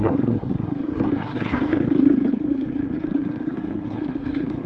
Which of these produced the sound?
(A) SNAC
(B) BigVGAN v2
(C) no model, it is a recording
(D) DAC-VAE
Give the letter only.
A